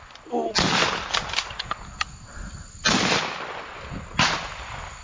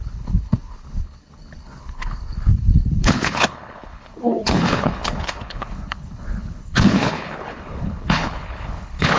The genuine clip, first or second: first